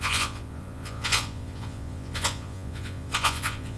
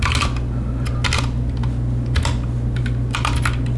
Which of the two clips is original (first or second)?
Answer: second